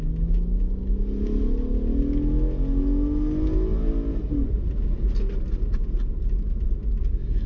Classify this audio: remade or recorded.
recorded